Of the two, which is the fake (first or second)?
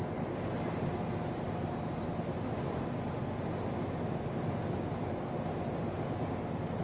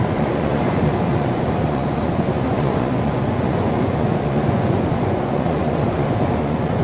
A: second